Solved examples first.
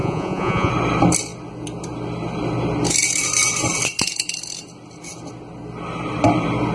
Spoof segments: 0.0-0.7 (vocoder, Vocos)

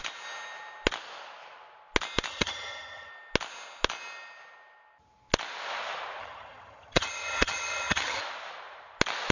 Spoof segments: 2.3-3.1 (vocoder, HiFi-GAN); 6.2-8.2

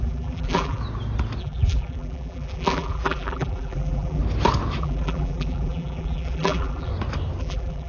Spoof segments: 0.0-0.8 (vocoder, BigVGAN v2); 1.4-4.2; 4.8-6.9; 7.4-7.9